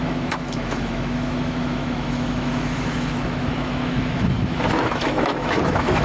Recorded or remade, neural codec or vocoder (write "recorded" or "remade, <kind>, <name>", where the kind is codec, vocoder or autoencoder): remade, autoencoder, DAC-VAE